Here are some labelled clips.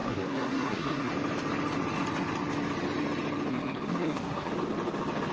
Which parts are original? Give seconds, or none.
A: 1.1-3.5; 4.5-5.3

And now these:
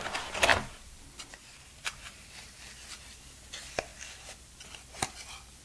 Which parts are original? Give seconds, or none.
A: 0.0-0.5; 2.6-5.6

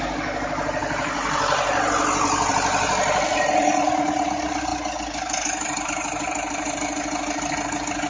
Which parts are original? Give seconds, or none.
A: 0.0-8.1

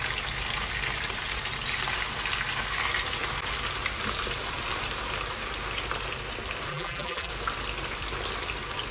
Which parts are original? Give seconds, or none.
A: 0.0-6.7; 7.3-8.9

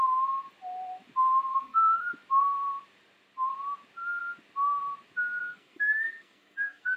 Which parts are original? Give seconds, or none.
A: 0.0-1.5; 2.1-5.4

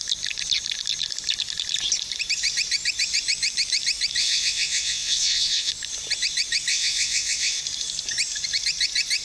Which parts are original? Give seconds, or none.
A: 0.0-4.2; 5.7-6.7; 7.6-9.2